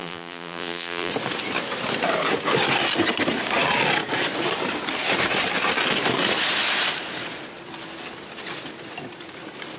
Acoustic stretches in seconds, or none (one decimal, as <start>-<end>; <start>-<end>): 1.1-9.8